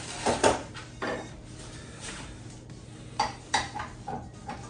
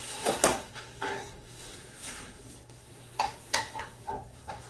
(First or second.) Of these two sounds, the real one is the first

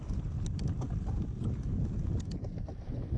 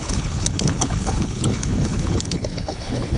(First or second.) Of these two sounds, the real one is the first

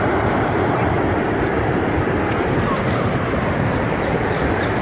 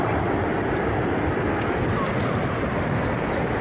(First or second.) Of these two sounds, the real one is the second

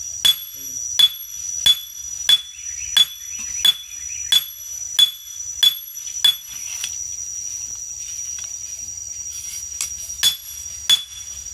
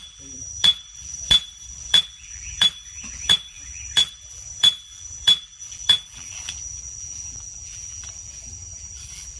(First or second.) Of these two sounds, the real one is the first